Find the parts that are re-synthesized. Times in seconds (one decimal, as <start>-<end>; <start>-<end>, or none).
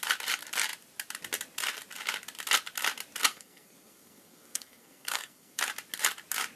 3.3-5.6